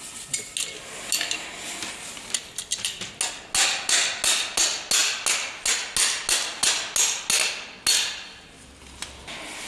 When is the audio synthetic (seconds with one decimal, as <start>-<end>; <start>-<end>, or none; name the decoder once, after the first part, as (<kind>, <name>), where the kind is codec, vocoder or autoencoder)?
none